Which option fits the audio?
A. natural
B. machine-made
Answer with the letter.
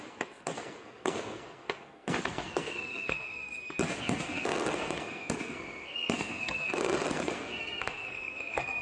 B